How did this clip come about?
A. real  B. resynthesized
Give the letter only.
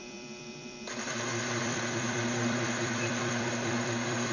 B